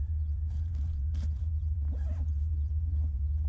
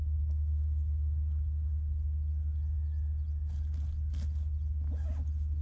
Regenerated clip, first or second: first